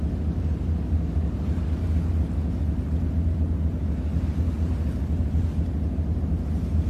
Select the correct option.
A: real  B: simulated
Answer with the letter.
A